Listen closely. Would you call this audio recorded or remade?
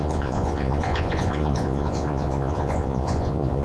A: remade